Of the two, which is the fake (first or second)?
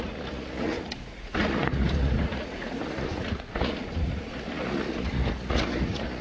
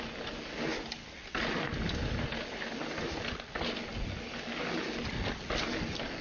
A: first